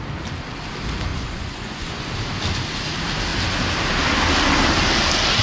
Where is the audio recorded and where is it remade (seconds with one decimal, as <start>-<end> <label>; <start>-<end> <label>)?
0.0-1.1 recorded; 1.1-2.1 remade; 2.1-5.4 recorded